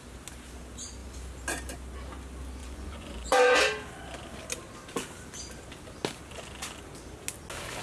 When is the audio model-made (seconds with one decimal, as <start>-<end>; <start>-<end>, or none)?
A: 2.6-3.6